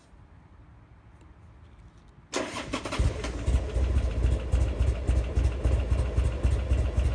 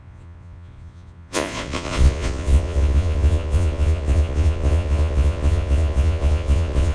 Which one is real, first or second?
first